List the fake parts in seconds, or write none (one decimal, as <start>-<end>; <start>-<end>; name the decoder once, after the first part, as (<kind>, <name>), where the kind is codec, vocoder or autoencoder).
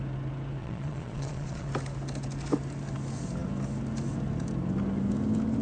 0.6-1.7 (vocoder, Vocos)